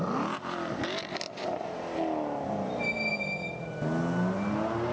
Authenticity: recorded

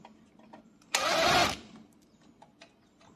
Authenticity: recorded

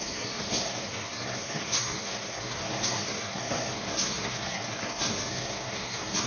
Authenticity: remade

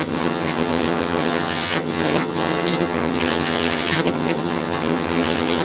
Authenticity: remade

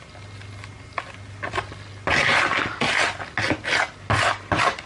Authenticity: recorded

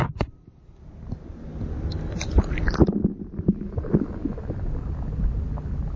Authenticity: recorded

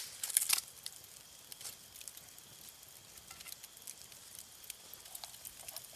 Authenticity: recorded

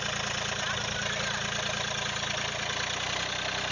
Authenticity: recorded